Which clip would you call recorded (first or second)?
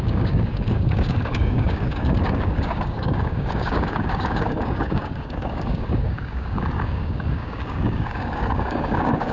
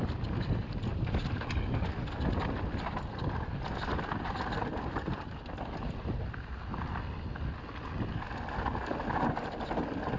second